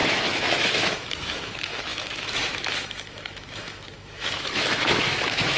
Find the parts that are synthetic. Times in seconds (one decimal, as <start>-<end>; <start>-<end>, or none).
0.0-5.6

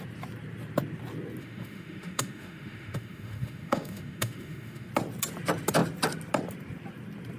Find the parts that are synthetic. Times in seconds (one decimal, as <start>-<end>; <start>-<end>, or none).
1.4-4.9

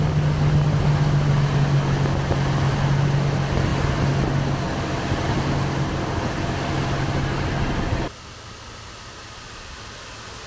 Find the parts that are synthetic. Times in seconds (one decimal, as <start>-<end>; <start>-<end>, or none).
none

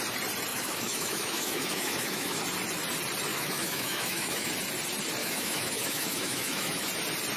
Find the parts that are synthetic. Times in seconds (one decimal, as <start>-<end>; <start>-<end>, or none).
0.5-2.4; 3.3-4.5; 5.2-6.9

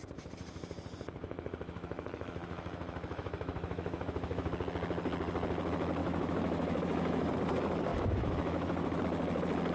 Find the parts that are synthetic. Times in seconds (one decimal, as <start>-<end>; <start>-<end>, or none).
1.2-4.5; 6.0-7.3; 7.9-9.0

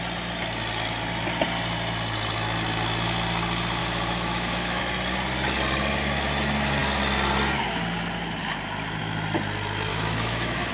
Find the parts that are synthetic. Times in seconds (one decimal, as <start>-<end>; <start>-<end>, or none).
3.8-4.8; 9.9-10.7